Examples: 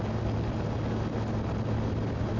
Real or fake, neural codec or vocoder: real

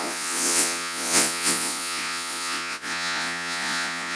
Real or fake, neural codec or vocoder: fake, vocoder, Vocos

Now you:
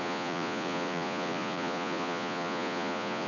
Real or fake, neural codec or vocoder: fake, vocoder, Vocos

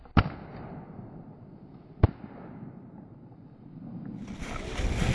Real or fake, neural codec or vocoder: real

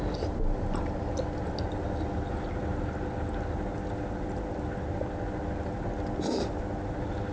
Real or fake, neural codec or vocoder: real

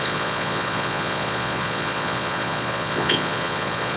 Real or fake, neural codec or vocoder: fake, vocoder, Vocos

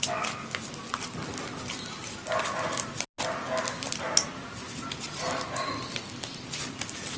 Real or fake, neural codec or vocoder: real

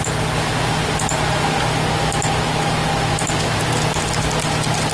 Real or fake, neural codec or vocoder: real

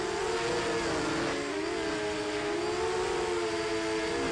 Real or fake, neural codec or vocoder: real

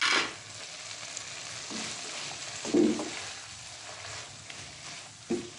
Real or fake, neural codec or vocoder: real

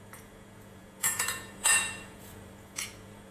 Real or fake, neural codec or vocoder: fake, vocoder, Vocos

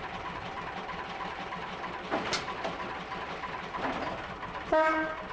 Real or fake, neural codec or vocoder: real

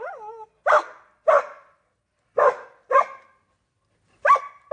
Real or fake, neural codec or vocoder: real